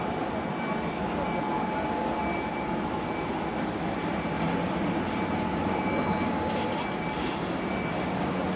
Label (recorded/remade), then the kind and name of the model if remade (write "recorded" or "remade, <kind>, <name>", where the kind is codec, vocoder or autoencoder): recorded